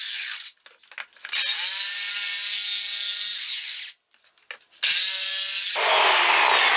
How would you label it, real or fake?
real